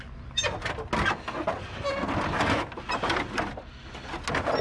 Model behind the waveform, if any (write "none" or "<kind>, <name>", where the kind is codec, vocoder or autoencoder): none